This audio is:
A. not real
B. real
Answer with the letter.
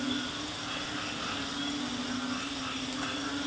B